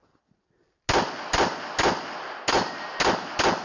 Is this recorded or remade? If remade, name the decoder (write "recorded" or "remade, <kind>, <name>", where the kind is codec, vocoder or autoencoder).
recorded